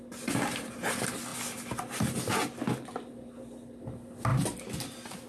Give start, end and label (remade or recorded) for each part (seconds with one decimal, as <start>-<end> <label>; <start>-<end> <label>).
0.0-5.3 recorded